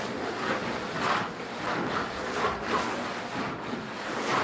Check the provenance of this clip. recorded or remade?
recorded